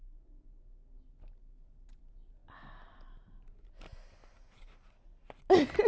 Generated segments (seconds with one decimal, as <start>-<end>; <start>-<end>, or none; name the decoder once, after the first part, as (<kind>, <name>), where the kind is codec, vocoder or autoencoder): none